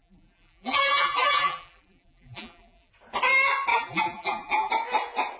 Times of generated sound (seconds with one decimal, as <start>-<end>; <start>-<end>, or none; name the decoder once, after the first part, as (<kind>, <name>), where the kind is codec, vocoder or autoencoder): 0.0-2.9 (vocoder, BigVGAN v2); 3.7-4.7